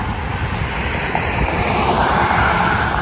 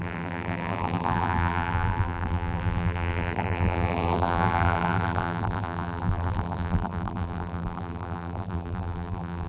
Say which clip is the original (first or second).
first